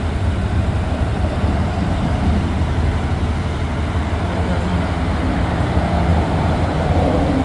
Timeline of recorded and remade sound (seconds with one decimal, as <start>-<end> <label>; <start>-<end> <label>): 0.0-1.1 recorded; 1.1-1.9 remade; 1.9-6.1 recorded; 6.1-7.4 remade